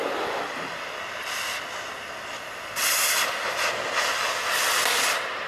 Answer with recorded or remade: recorded